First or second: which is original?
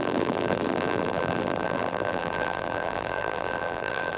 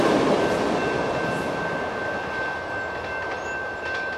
second